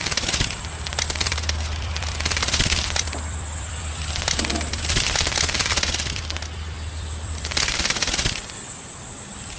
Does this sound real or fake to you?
fake